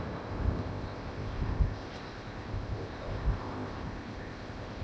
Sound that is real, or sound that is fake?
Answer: fake